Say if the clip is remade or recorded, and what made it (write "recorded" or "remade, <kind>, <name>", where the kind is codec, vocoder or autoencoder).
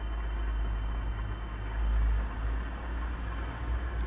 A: recorded